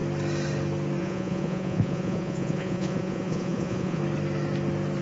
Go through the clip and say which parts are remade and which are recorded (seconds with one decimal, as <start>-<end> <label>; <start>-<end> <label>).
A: 0.0-1.0 recorded; 1.0-4.0 remade; 4.0-5.0 recorded